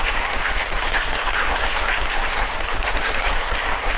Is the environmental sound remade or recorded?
remade